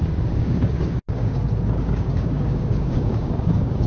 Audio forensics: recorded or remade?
remade